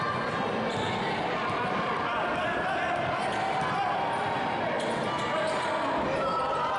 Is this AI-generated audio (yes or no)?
no